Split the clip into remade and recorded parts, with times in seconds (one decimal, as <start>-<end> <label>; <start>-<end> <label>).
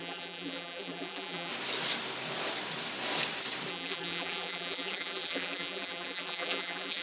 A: 0.0-1.5 remade; 1.5-3.7 recorded; 3.7-7.0 remade